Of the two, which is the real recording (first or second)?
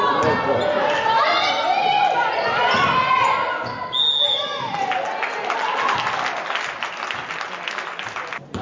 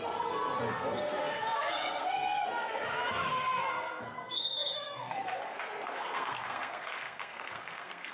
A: first